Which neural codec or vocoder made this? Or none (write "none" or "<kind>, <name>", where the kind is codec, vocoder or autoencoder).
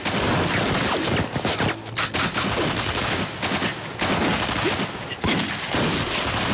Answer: none